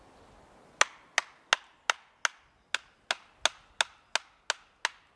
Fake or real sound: real